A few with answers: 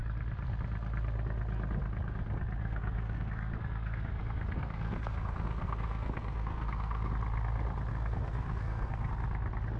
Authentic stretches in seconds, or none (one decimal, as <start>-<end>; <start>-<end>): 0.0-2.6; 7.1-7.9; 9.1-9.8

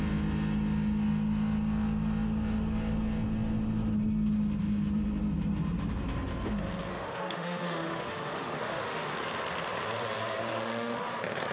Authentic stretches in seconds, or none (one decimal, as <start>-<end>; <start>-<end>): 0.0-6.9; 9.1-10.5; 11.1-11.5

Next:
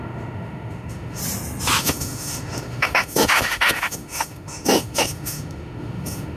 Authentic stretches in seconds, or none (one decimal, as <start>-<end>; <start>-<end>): 1.2-1.8

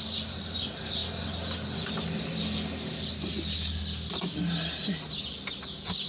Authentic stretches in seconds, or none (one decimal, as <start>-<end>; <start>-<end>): 0.0-6.1